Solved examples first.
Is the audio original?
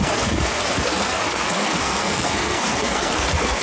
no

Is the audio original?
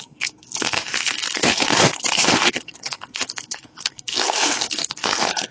no